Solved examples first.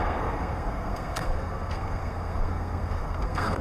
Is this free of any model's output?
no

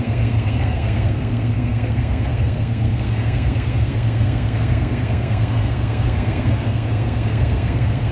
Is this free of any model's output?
no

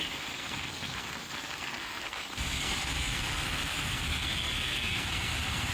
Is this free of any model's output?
no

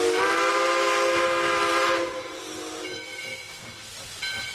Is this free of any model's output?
yes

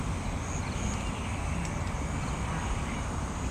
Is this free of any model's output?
yes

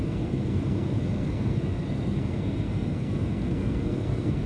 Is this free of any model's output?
no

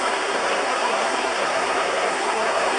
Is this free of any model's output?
no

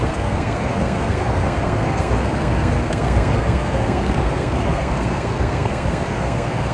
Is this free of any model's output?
no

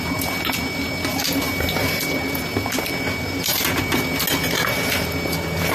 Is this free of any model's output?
yes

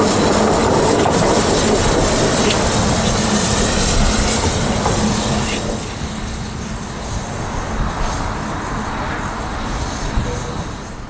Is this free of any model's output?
yes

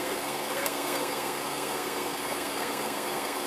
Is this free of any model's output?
no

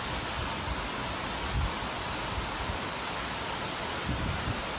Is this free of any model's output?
yes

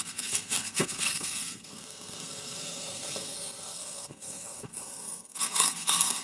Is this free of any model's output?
no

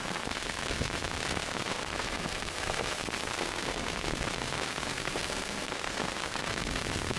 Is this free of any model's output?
no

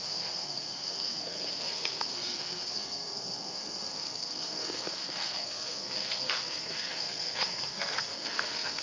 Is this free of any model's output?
no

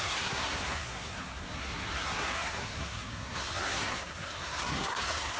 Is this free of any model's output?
no